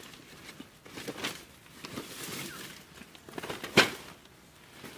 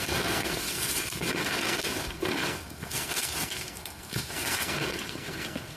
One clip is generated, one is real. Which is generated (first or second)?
second